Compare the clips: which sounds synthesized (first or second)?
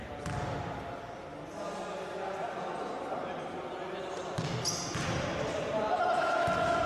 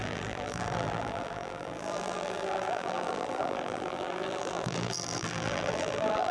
second